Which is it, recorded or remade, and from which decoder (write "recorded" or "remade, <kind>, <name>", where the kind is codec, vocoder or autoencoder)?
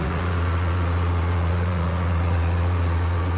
remade, vocoder, Vocos